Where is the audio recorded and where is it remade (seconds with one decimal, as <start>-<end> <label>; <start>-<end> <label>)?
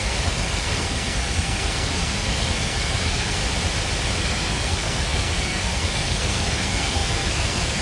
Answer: 0.0-3.4 remade; 3.4-4.2 recorded; 4.2-7.8 remade